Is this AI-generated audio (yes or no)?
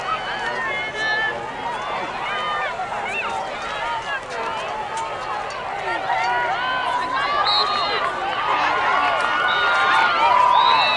no